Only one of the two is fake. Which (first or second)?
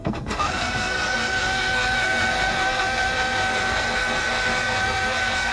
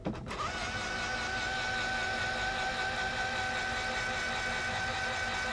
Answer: first